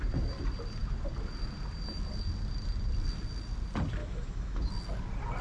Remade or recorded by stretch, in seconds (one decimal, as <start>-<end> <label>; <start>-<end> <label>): 0.0-4.0 recorded; 4.0-4.7 remade; 4.7-5.4 recorded